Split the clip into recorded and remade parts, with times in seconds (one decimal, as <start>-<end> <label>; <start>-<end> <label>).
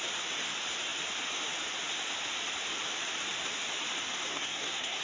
0.0-4.3 recorded; 4.3-5.0 remade